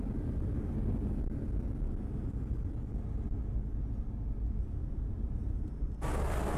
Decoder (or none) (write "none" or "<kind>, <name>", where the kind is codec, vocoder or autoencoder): none